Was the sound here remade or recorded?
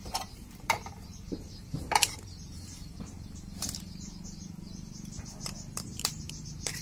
remade